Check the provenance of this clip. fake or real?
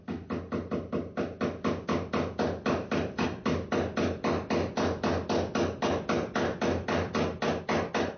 real